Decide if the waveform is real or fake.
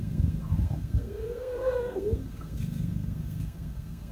fake